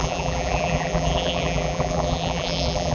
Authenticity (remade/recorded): remade